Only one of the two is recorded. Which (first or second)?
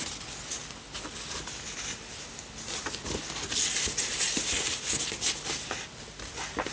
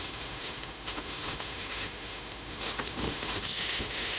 first